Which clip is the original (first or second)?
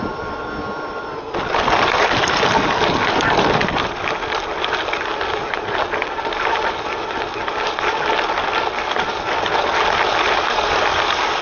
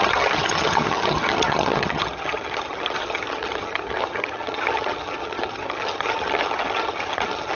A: first